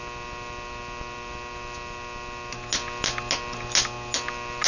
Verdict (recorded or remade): recorded